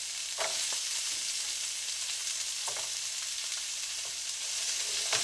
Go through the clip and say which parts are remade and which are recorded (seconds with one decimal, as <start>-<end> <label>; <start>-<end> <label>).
0.0-5.2 recorded